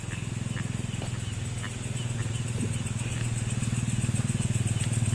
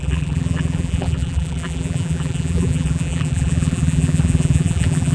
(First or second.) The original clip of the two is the first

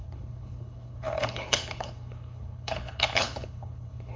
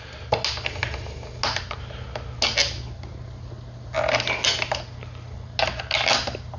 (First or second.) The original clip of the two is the second